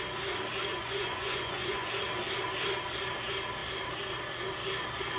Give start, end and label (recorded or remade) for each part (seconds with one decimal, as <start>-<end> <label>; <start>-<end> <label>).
0.0-0.7 recorded; 0.7-1.9 remade; 1.9-5.2 recorded